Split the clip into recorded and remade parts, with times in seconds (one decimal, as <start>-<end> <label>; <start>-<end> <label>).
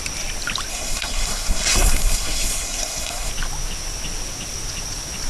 0.0-0.7 recorded; 0.7-3.3 remade; 3.3-5.3 recorded